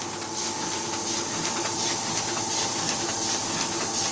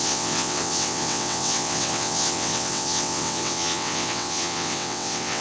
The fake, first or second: second